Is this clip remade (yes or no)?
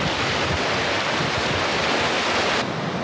no